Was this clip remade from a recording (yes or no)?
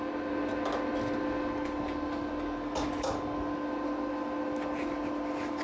no